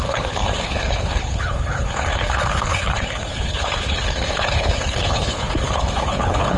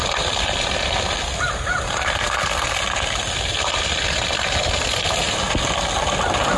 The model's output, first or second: first